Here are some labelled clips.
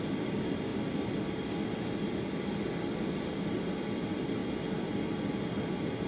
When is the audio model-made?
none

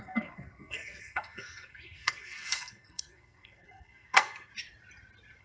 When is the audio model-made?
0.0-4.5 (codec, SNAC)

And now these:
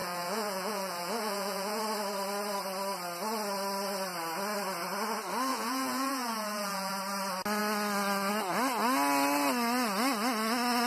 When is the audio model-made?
0.0-1.8 (vocoder, Vocos); 5.5-6.9

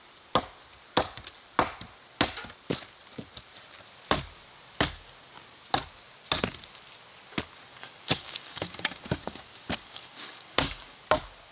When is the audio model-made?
7.7-11.0 (codec, DAC)

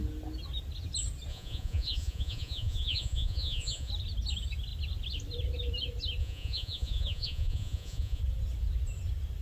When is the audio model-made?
1.3-3.9 (vocoder, Vocos); 6.2-8.2

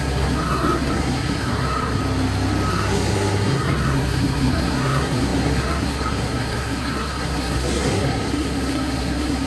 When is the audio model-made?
0.0-2.0 (codec, SNAC); 2.7-9.5

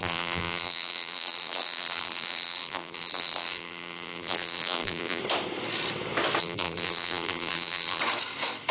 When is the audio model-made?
0.0-5.2 (vocoder, BigVGAN v2); 6.4-8.0